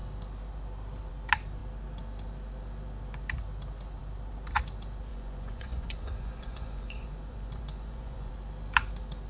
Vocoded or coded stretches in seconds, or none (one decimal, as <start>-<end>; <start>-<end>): 5.1-8.3